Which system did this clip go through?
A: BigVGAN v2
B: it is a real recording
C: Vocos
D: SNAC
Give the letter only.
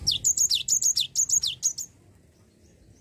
B